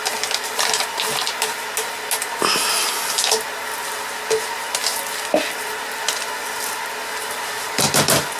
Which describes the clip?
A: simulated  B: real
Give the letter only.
B